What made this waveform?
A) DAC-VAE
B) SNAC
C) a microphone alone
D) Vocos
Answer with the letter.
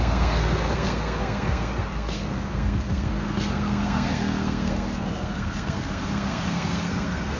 B